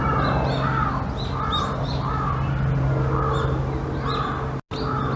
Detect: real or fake real